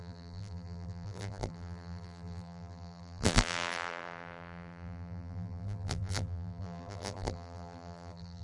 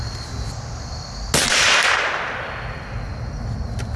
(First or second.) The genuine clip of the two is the second